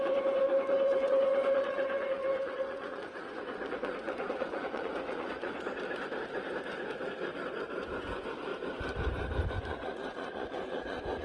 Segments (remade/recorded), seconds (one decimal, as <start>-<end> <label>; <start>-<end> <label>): 0.0-5.5 remade; 5.5-7.8 recorded; 7.8-8.5 remade; 8.5-9.5 recorded; 9.5-11.2 remade